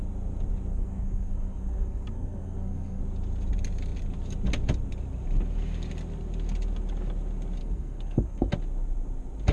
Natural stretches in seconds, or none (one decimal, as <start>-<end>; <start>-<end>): 0.0-0.7; 3.0-7.6; 8.5-9.5